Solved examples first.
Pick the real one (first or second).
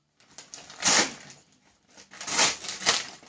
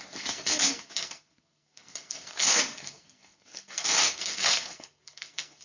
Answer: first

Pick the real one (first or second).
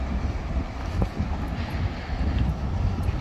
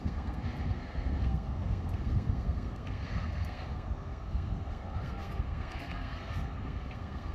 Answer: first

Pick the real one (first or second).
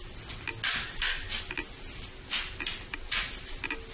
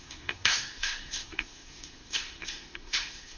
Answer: first